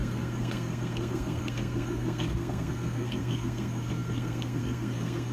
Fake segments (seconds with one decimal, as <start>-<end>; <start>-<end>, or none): 0.0-5.3